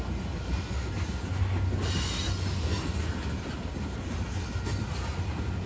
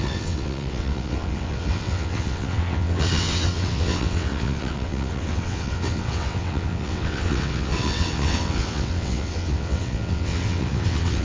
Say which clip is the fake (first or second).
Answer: second